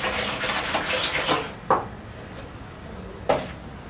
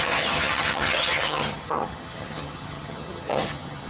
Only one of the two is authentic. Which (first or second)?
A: first